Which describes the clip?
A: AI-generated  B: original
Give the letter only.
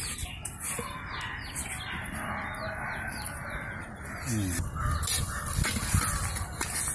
B